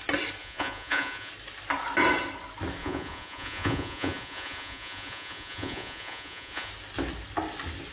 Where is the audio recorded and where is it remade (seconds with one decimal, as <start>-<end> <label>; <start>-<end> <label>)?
0.0-0.4 recorded; 0.4-1.3 remade; 1.3-2.8 recorded; 2.8-6.7 remade; 6.7-7.9 recorded